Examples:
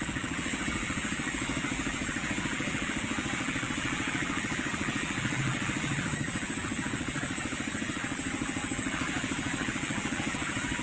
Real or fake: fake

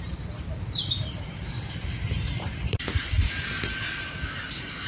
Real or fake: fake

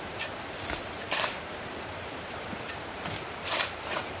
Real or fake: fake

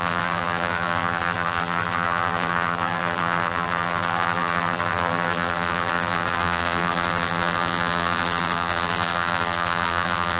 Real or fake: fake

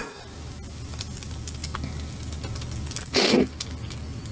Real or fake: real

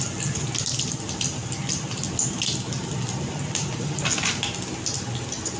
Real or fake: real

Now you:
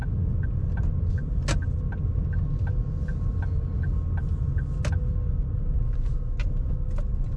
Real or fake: real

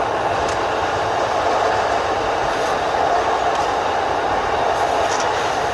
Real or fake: real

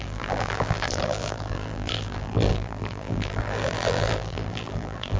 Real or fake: fake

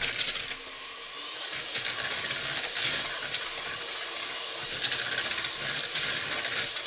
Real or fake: real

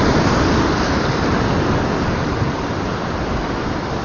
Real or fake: fake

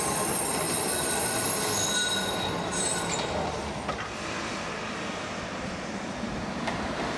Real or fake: real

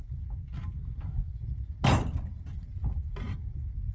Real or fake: real